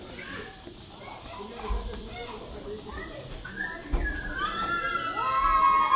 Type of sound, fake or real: real